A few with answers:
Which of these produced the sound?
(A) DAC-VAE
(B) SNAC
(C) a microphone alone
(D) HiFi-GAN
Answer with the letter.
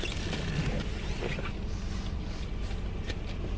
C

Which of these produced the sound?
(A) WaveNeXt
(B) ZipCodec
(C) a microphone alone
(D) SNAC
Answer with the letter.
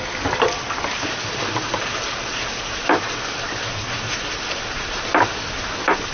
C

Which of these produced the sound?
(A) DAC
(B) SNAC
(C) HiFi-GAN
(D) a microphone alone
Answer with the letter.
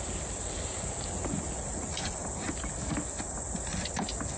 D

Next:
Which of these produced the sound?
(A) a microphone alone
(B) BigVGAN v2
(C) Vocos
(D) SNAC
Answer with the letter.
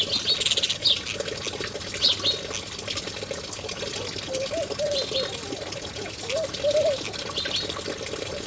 A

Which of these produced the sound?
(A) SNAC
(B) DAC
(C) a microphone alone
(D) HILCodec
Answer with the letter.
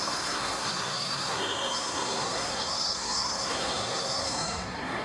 A